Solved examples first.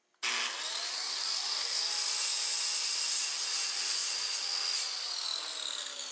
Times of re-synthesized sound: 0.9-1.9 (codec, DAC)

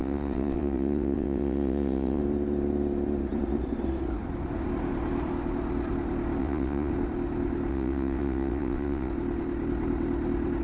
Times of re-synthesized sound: 0.0-2.2 (vocoder, WaveNeXt); 6.4-6.9; 7.7-9.1

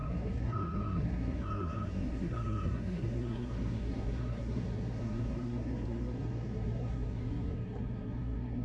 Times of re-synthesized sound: 0.0-8.6 (codec, SNAC)

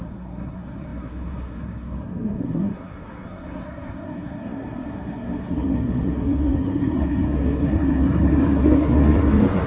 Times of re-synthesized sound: 0.0-9.7 (codec, SNAC)

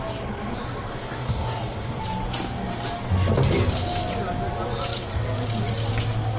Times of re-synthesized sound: 0.9-2.0 (codec, SNAC)